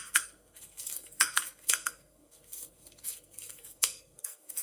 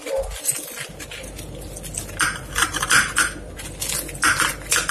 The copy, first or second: first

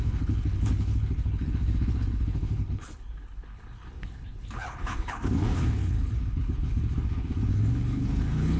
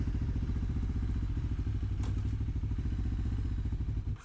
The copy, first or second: first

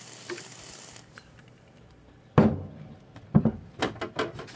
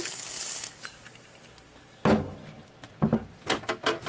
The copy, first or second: first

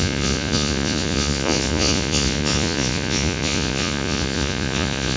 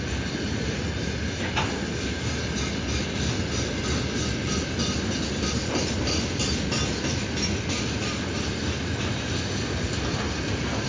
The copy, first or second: first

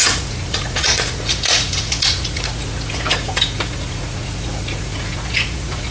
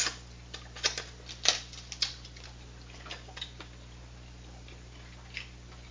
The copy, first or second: first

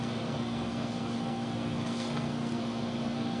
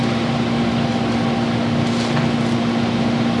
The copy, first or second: first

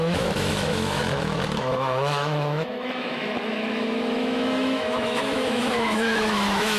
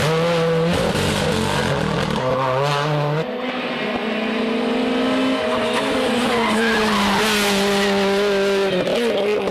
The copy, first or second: first